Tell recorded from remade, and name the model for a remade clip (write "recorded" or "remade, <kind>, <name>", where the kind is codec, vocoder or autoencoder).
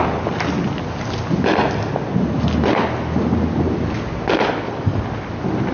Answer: recorded